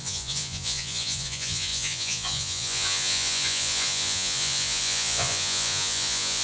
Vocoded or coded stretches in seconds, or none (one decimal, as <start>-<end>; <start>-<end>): 0.0-6.4